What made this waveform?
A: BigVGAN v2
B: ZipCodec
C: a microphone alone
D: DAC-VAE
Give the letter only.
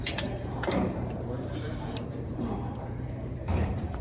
A